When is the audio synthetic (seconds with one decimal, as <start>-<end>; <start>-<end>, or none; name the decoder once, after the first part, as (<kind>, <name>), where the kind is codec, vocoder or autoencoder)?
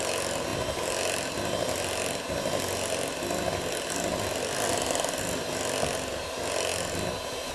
none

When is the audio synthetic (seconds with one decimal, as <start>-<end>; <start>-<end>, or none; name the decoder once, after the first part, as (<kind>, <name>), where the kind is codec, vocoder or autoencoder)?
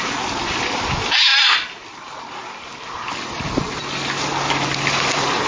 none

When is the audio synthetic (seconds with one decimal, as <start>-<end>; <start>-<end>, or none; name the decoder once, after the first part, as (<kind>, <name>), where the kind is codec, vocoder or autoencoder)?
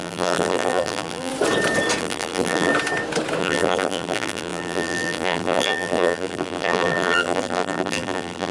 0.0-1.3 (vocoder, BigVGAN v2); 2.0-2.7; 3.4-8.5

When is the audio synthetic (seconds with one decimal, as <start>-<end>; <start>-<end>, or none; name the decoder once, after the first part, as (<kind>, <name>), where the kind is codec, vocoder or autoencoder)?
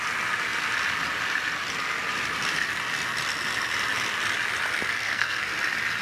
4.9-5.5 (codec, SNAC)